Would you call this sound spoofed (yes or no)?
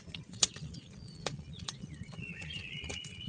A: yes